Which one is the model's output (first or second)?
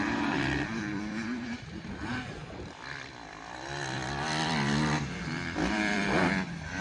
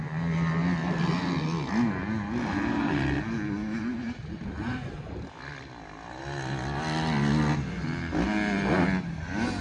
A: first